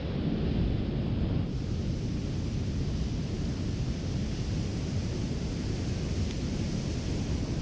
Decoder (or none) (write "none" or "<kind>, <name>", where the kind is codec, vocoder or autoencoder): none